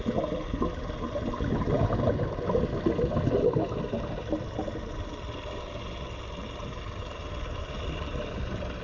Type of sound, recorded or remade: recorded